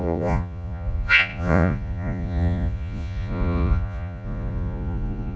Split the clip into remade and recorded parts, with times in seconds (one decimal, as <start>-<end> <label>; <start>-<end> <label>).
0.0-5.4 remade